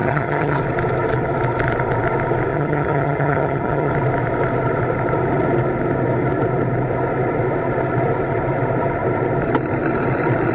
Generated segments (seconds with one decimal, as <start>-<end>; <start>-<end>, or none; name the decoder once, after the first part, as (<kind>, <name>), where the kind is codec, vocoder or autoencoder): 0.0-0.6 (vocoder, HiFi-GAN); 2.5-3.9